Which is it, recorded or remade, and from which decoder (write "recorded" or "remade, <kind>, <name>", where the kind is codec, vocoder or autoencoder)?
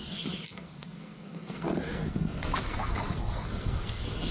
remade, codec, SNAC